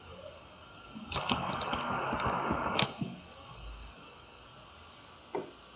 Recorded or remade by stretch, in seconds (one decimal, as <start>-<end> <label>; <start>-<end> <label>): 0.0-4.5 remade; 4.5-5.8 recorded